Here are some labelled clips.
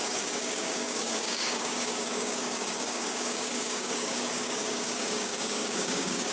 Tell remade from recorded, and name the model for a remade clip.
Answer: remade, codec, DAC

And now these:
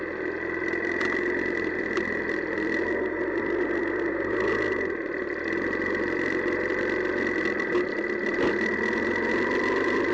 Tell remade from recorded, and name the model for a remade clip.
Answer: recorded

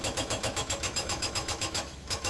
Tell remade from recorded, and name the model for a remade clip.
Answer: remade, autoencoder, DAC-VAE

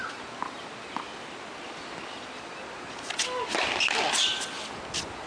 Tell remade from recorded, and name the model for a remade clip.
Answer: recorded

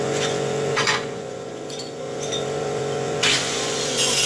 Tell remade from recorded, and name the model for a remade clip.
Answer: remade, vocoder, Vocos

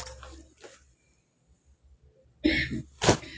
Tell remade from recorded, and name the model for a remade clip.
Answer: recorded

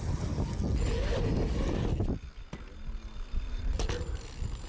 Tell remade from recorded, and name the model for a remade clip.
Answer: recorded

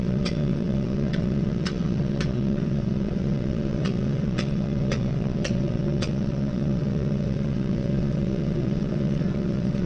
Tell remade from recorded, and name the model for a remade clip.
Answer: remade, vocoder, WaveNeXt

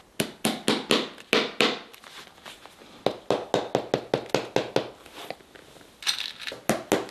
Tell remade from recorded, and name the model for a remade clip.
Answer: recorded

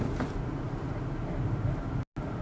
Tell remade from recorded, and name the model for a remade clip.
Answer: recorded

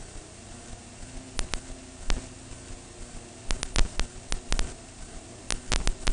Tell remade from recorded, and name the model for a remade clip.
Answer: recorded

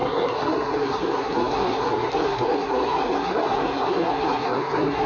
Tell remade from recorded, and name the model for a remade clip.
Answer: remade, codec, SNAC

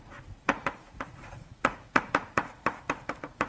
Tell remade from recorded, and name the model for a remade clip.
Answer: remade, vocoder, Vocos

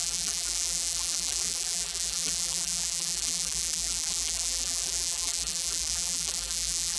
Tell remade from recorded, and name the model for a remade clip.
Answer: remade, vocoder, BigVGAN v2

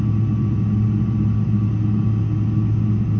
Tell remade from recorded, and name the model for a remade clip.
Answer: recorded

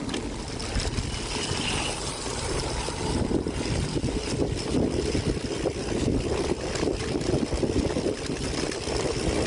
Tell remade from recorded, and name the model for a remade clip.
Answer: recorded